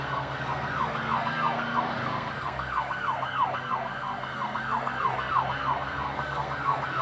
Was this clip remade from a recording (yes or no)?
yes